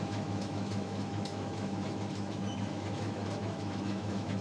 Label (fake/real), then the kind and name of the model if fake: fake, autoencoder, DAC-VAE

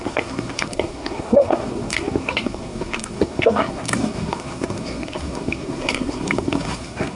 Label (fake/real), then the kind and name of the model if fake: fake, codec, SNAC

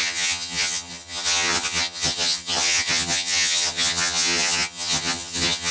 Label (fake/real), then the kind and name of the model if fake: fake, vocoder, HiFi-GAN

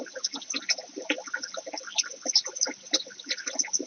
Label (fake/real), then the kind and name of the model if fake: real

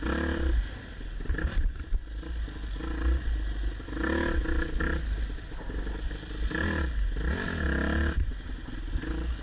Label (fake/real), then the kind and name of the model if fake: real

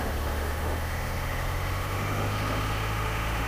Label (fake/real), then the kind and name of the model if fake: fake, autoencoder, DAC-VAE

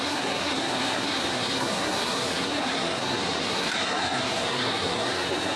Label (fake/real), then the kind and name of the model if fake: fake, codec, SNAC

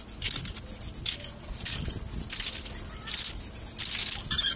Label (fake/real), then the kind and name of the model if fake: real